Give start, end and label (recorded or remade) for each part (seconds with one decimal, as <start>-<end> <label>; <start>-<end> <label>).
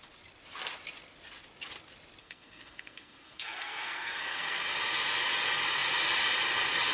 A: 0.0-2.2 recorded; 2.2-4.7 remade; 4.7-6.9 recorded